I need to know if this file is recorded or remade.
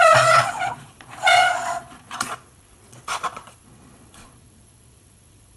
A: remade